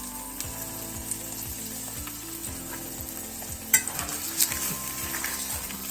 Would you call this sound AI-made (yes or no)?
no